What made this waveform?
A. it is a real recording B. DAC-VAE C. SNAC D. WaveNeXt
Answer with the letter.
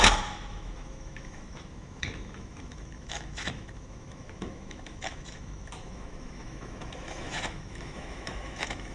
B